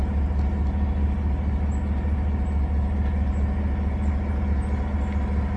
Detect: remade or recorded recorded